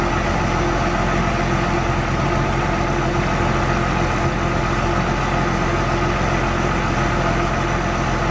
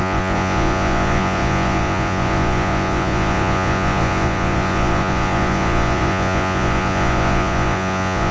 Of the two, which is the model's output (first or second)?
second